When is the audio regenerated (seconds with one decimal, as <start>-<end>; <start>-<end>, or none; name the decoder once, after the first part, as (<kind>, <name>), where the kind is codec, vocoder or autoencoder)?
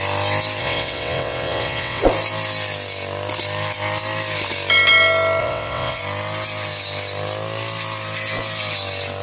0.6-2.0 (vocoder, WaveNeXt); 5.4-6.0